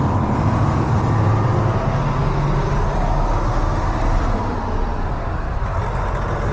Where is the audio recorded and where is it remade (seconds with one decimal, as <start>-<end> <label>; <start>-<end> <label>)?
0.0-6.5 recorded